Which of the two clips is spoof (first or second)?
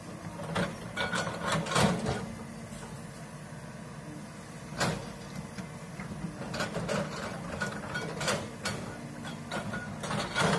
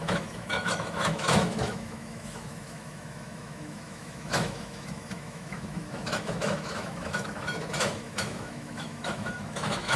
second